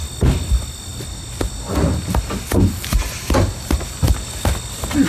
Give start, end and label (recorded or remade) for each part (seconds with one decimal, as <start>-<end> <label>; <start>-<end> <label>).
0.0-5.1 recorded